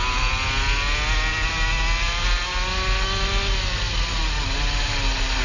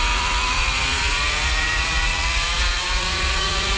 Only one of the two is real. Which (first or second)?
first